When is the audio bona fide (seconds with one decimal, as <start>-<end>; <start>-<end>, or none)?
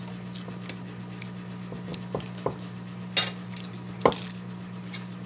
0.0-5.3